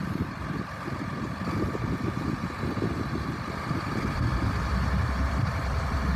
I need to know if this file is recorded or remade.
remade